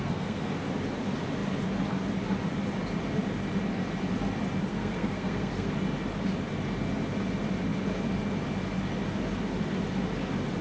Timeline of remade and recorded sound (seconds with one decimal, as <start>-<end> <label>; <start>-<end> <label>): 0.0-0.5 remade; 0.5-4.7 recorded; 4.7-5.7 remade; 5.7-10.6 recorded